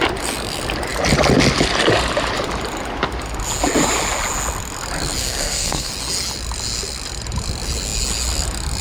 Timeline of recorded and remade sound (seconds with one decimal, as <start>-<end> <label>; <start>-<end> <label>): 0.0-5.2 recorded; 5.2-5.9 remade; 5.9-8.8 recorded